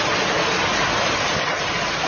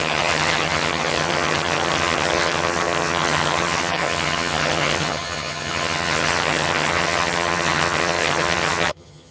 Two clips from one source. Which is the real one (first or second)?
first